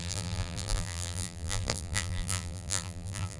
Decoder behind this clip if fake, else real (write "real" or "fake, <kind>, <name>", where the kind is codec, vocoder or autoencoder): fake, vocoder, BigVGAN v2